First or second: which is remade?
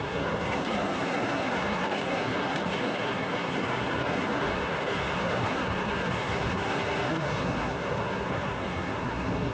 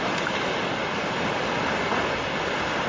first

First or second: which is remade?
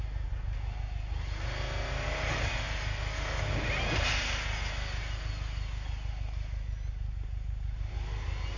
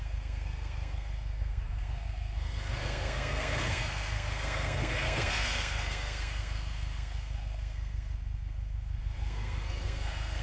second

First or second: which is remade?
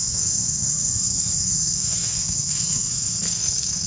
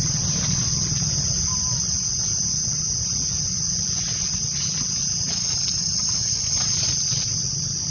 first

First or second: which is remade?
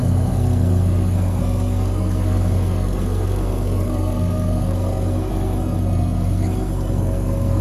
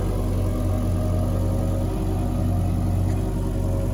first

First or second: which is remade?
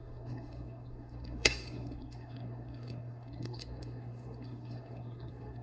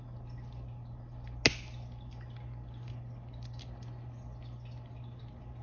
first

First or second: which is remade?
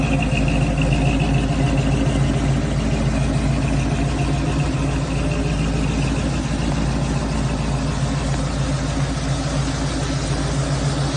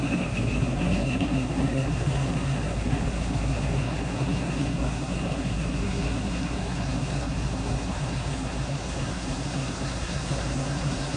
second